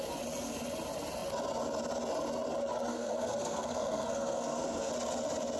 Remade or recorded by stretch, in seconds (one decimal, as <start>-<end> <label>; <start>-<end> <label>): 0.0-2.9 recorded; 2.9-4.9 remade; 4.9-5.6 recorded

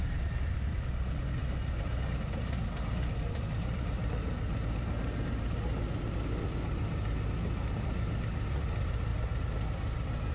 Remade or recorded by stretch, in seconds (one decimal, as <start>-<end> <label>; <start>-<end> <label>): 0.0-10.3 recorded

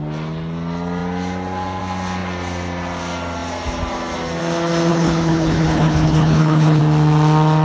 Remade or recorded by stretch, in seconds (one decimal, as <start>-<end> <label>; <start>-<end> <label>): 0.0-4.9 recorded; 4.9-6.8 remade; 6.8-7.6 recorded